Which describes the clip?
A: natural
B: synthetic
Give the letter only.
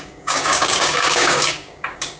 B